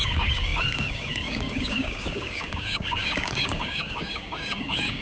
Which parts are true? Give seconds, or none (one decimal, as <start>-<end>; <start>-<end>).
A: none